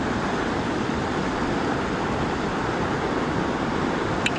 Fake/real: real